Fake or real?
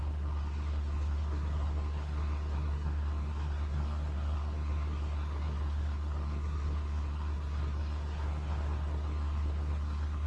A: fake